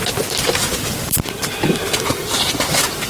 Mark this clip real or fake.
real